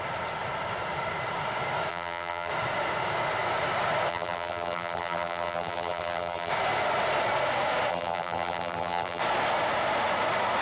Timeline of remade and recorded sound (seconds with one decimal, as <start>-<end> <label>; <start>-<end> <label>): 0.0-1.9 recorded; 1.9-2.5 remade; 2.5-4.1 recorded; 4.1-6.5 remade; 6.5-7.9 recorded; 7.9-9.2 remade; 9.2-10.6 recorded